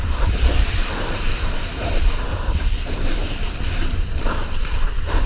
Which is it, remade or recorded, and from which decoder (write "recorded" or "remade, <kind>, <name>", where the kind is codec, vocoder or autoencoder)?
remade, vocoder, BigVGAN v2